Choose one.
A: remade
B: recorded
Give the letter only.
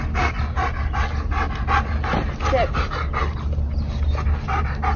B